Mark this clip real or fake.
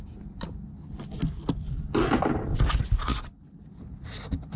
real